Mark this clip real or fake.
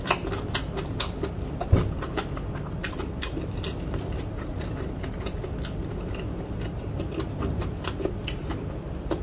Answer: real